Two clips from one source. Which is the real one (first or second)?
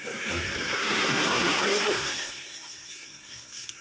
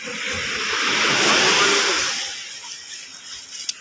second